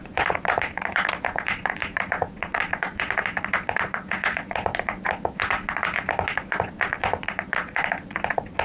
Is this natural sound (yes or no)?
no